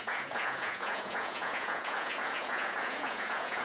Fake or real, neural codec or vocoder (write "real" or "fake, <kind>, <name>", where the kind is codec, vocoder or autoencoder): fake, vocoder, Vocos